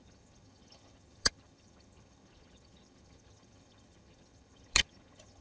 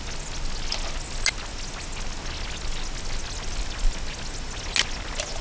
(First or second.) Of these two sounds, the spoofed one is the first